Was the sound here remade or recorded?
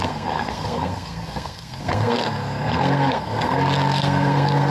remade